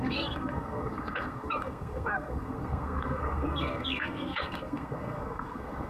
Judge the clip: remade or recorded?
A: remade